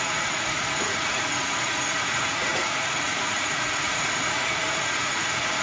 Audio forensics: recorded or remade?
remade